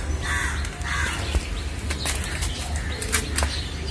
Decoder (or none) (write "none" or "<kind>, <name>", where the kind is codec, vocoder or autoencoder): none